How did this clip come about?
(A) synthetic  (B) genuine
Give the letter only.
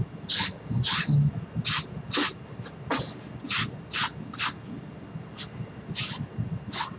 B